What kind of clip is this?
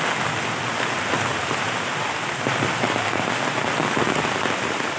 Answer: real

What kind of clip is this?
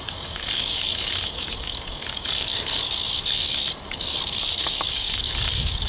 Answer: fake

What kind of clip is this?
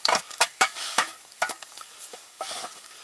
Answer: fake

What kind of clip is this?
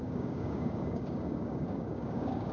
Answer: fake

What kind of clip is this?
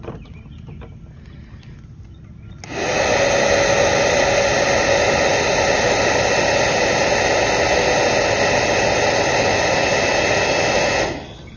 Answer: real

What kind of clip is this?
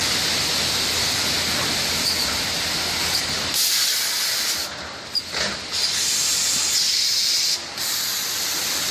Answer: real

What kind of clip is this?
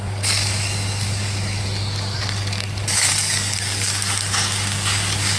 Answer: fake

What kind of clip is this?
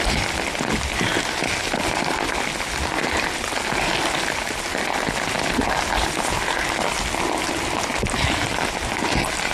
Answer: real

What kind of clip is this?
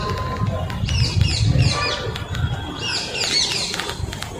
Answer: real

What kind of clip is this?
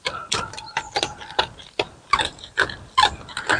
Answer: real